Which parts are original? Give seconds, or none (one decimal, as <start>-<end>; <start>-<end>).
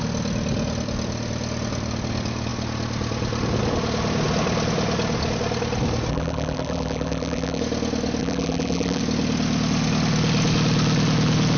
0.0-6.1; 7.6-8.2; 9.0-11.6